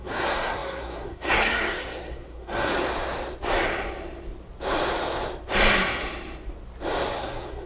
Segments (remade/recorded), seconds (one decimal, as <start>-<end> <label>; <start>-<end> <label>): 0.0-2.7 remade; 2.7-7.2 recorded; 7.2-7.7 remade